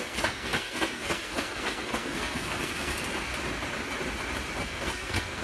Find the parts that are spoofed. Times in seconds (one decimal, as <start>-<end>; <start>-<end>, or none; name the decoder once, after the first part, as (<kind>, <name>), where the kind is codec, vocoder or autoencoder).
0.0-3.3 (codec, SNAC); 4.6-5.4